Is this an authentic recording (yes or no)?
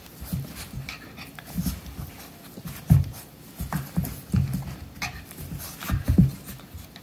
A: yes